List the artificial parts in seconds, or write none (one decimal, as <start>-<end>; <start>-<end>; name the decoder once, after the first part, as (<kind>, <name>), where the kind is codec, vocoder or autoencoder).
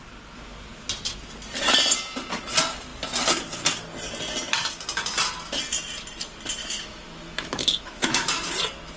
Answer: 6.6-8.3 (autoencoder, DAC-VAE)